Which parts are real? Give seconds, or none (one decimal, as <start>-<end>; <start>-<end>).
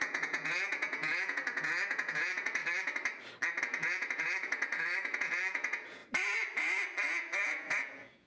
2.6-3.6; 6.0-7.1